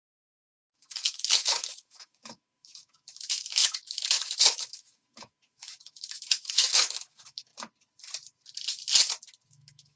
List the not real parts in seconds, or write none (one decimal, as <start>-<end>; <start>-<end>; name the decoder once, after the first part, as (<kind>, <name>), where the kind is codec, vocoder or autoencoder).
0.0-7.5 (autoencoder, DAC-VAE); 9.5-10.0